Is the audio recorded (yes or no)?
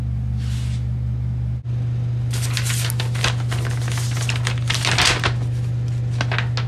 yes